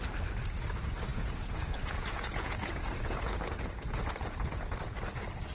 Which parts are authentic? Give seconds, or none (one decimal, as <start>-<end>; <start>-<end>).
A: 0.0-1.1; 4.4-5.5